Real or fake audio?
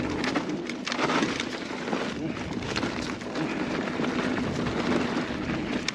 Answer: real